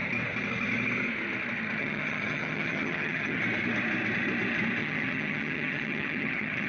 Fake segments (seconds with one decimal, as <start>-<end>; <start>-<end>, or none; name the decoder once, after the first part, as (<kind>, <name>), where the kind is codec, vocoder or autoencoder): 1.8-3.4 (vocoder, HiFi-GAN); 4.8-6.7